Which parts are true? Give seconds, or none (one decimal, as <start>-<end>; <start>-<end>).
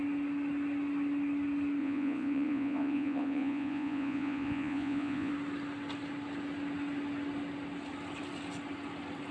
0.0-1.8; 5.3-9.3